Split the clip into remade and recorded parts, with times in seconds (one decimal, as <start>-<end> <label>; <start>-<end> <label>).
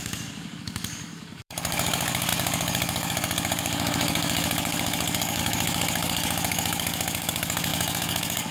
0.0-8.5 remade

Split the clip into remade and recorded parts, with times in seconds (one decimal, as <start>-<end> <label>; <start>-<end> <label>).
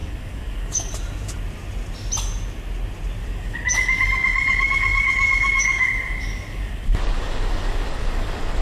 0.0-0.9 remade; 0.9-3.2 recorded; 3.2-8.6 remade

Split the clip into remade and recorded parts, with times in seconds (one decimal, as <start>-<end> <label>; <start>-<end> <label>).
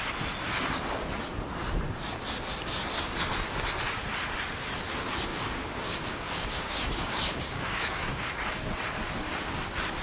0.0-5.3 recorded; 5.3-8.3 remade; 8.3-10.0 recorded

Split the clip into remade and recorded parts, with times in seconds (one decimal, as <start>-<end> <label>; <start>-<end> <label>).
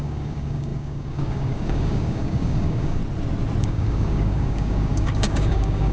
0.0-3.0 remade; 3.0-3.6 recorded; 3.6-5.9 remade